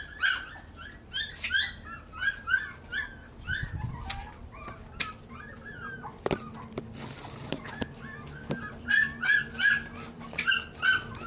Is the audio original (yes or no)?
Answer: yes